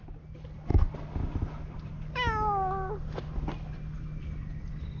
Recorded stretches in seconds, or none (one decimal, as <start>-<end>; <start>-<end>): 0.0-5.0